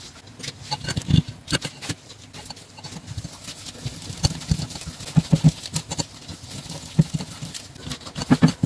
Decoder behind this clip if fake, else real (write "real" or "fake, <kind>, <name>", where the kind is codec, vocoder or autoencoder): real